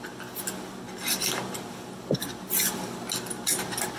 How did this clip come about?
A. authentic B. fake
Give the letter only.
A